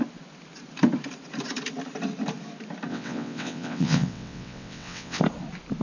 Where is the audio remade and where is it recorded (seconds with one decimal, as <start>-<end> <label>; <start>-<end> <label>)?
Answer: 0.0-2.9 recorded; 2.9-5.2 remade; 5.2-5.8 recorded